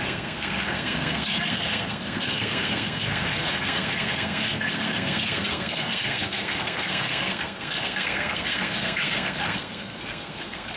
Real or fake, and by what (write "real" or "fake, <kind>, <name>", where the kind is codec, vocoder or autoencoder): fake, codec, SNAC